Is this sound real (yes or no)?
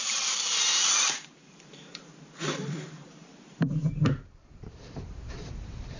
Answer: no